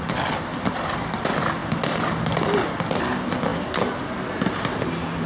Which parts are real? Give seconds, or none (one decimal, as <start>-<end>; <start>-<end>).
0.0-5.3